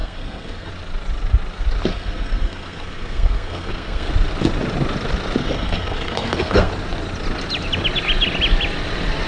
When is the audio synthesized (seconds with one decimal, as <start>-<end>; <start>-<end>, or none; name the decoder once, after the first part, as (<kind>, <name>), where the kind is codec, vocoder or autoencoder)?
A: 0.0-0.7 (codec, SNAC); 1.9-4.1; 5.4-6.7